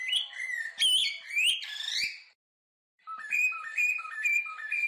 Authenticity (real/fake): fake